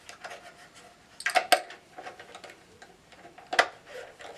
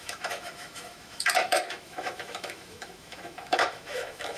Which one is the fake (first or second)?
second